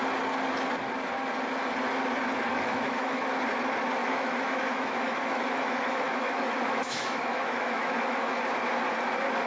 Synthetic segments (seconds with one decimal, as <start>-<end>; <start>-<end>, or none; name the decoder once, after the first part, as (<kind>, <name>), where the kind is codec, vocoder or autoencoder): 2.5-3.2 (autoencoder, DAC-VAE); 4.0-8.4